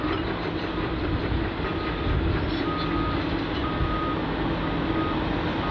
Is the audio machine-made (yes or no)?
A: no